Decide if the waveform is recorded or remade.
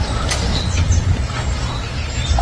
recorded